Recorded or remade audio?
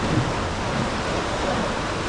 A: recorded